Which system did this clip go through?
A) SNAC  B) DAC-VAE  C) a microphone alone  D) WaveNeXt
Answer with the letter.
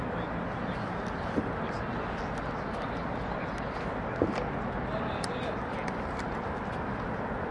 C